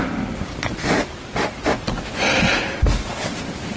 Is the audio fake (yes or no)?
no